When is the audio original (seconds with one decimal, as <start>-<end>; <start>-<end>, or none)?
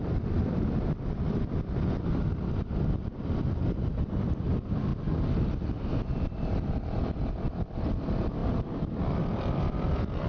4.9-7.3; 8.4-9.2